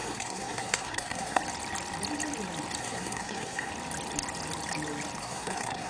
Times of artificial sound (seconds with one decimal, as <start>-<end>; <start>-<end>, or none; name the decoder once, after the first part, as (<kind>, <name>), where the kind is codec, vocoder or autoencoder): 0.0-1.4 (codec, SNAC); 2.8-3.7; 5.2-5.9